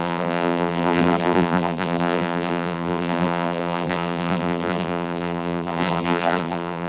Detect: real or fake fake